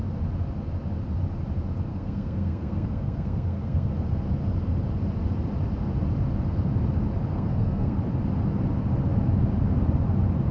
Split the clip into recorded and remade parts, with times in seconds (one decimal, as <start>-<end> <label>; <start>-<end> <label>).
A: 0.0-1.9 recorded; 1.9-3.9 remade; 3.9-7.3 recorded; 7.3-8.0 remade; 8.0-10.5 recorded